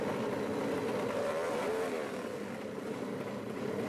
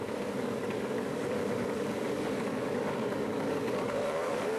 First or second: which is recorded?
first